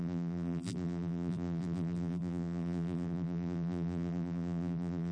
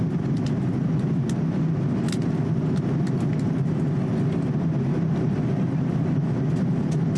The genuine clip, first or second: second